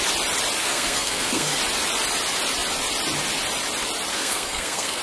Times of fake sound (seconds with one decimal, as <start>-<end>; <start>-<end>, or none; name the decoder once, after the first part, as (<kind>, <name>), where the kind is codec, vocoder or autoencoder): 0.6-1.6 (codec, SNAC); 4.1-5.0